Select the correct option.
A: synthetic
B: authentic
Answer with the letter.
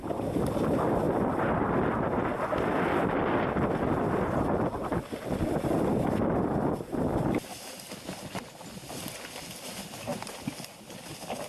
B